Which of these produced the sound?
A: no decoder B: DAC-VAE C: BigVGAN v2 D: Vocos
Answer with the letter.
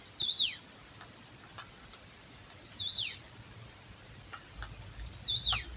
A